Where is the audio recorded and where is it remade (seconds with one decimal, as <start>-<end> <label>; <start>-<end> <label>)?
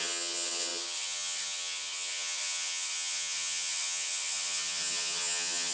0.0-5.7 remade